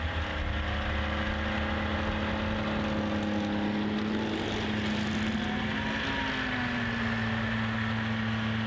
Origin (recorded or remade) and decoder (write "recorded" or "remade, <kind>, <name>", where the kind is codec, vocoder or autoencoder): recorded